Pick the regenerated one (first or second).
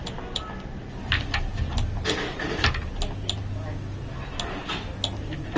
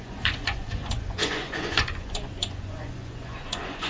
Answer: second